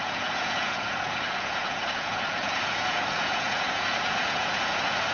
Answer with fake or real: fake